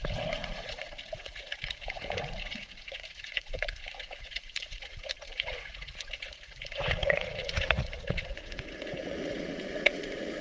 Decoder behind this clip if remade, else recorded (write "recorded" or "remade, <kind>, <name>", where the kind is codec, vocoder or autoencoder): remade, vocoder, Vocos